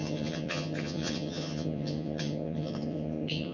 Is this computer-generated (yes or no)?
yes